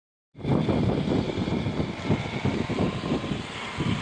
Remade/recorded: recorded